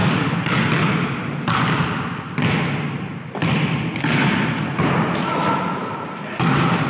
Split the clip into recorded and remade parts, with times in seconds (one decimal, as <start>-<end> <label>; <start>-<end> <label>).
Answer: 0.0-6.9 recorded